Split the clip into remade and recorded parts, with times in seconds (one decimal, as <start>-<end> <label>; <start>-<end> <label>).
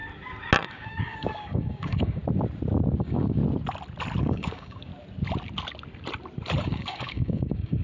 0.0-0.7 recorded; 0.7-2.2 remade; 2.2-3.0 recorded; 3.0-3.4 remade; 3.4-4.2 recorded; 4.2-4.9 remade; 4.9-6.6 recorded; 6.6-7.8 remade